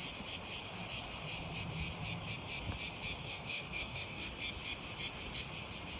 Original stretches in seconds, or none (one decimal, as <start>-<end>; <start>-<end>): 0.0-3.2; 4.3-6.0